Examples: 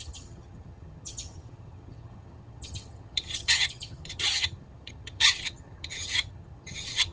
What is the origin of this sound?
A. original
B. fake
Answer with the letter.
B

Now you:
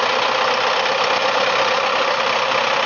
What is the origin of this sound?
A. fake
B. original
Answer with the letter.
B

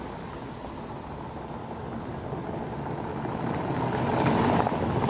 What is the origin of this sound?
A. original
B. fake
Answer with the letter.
A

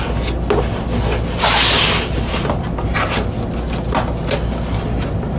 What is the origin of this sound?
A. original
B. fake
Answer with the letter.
A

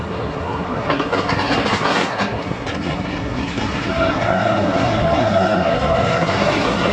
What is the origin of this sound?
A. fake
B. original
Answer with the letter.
A